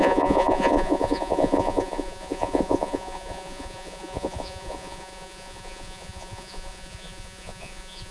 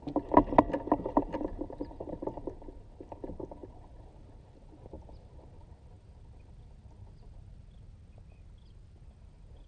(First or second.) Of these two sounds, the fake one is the first